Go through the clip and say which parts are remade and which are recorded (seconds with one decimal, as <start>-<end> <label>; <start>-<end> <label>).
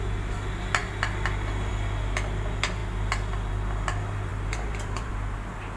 0.0-4.3 recorded; 4.3-5.1 remade; 5.1-5.8 recorded